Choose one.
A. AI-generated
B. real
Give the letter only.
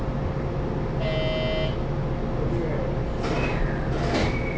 B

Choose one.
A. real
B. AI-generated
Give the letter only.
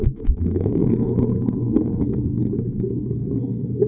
B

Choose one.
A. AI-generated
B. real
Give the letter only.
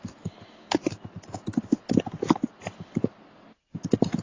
B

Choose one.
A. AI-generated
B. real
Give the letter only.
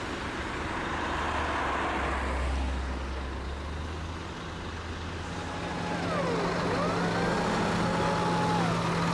B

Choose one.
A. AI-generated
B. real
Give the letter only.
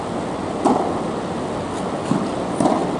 B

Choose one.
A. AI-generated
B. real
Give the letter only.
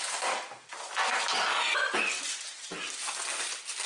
B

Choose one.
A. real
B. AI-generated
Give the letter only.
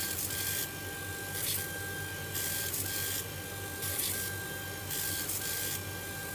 A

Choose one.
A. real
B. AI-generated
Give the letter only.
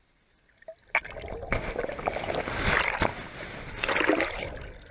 A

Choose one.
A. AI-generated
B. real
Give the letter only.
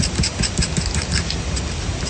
B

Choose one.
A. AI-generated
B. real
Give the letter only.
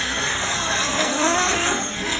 A